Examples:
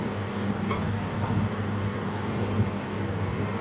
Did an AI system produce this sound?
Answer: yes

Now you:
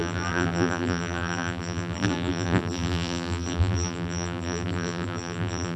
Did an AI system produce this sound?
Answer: yes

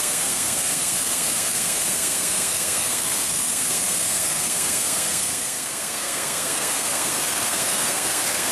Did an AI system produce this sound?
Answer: yes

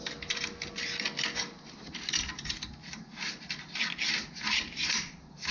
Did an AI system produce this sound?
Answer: no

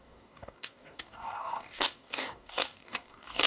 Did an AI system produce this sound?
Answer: yes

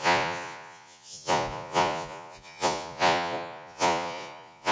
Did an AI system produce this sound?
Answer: yes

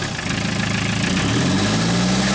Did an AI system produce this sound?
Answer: no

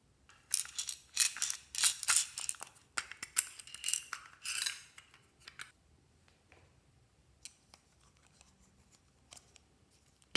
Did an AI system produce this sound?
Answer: no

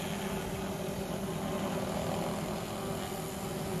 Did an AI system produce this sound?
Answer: no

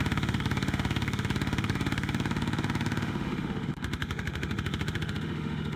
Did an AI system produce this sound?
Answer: yes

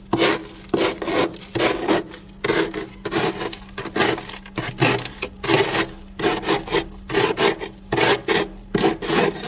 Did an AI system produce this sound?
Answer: no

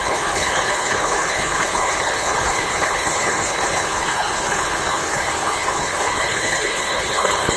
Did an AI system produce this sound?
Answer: yes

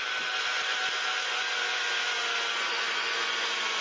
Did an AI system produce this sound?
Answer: yes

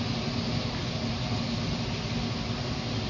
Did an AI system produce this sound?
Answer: no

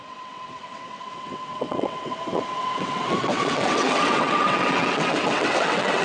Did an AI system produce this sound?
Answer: yes